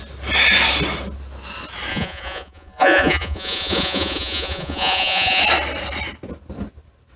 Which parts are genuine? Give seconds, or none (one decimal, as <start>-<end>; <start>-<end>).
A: 0.0-1.9; 5.4-7.2